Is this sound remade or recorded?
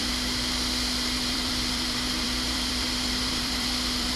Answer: remade